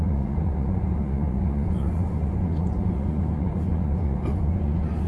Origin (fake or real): fake